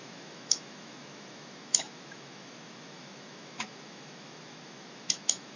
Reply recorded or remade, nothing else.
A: remade